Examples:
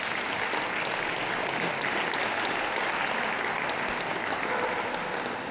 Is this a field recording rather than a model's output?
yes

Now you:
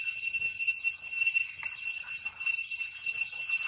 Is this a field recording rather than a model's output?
yes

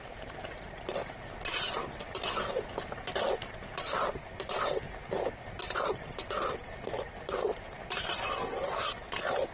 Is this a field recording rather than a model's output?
yes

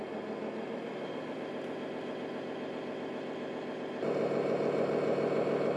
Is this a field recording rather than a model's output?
yes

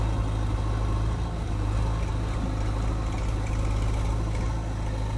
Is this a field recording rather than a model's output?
yes